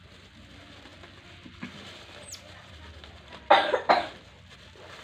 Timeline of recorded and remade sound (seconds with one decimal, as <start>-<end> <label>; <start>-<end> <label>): 0.0-5.0 recorded